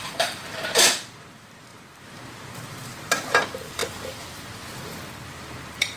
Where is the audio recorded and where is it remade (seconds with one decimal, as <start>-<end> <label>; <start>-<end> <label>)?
0.0-3.8 remade; 3.8-5.3 recorded; 5.3-6.0 remade